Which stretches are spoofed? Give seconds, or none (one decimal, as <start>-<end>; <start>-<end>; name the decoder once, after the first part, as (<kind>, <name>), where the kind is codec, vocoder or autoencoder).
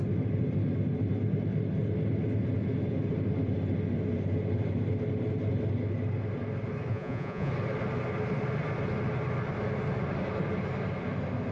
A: 6.9-7.5 (vocoder, Vocos)